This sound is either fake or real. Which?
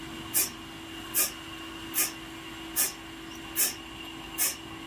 real